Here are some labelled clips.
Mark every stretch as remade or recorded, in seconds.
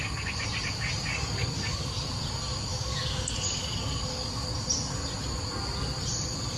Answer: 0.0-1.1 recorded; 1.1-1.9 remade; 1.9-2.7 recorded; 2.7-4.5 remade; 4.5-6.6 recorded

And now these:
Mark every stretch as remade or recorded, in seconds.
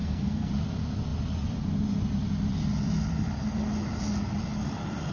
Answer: 0.0-0.5 remade; 0.5-5.1 recorded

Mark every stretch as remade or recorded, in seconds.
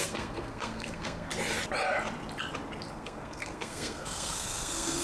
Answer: 0.0-1.3 remade; 1.3-2.9 recorded; 2.9-5.0 remade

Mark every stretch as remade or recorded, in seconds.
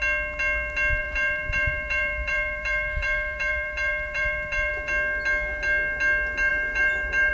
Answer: 0.0-1.0 recorded; 1.0-4.7 remade; 4.7-6.5 recorded; 6.5-7.3 remade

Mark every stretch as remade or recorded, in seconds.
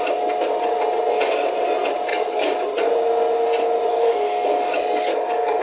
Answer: 0.0-2.1 recorded; 2.1-2.6 remade; 2.6-3.9 recorded; 3.9-5.6 remade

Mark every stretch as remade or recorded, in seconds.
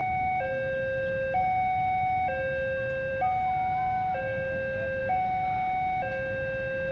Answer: 0.0-6.9 recorded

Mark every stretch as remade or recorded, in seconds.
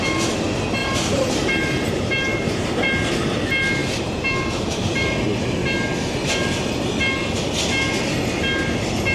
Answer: 0.0-0.8 recorded; 0.8-2.9 remade; 2.9-3.8 recorded; 3.8-5.5 remade; 5.5-6.2 recorded; 6.2-6.7 remade; 6.7-9.1 recorded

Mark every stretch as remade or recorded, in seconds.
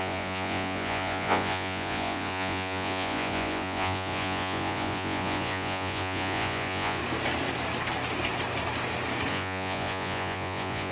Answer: 0.0-7.0 remade; 7.0-9.3 recorded; 9.3-10.9 remade